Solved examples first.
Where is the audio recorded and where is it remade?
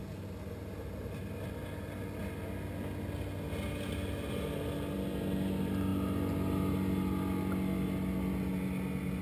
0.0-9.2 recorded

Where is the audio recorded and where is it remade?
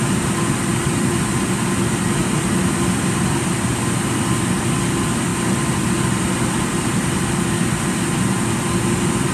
0.0-9.3 recorded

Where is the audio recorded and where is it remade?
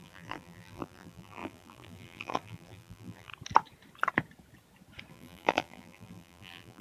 0.0-3.3 remade; 3.3-5.1 recorded; 5.1-6.8 remade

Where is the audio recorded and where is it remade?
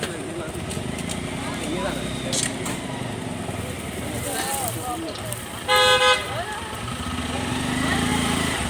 0.0-4.5 recorded; 4.5-5.4 remade; 5.4-8.1 recorded; 8.1-8.7 remade